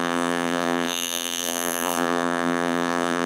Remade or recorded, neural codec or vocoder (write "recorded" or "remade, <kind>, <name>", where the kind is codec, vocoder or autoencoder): remade, vocoder, BigVGAN v2